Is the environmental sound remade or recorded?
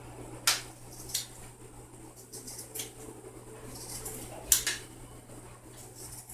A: recorded